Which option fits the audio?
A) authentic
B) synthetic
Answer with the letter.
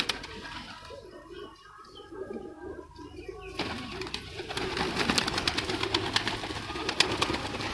A